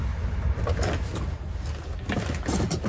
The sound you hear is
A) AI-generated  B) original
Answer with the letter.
B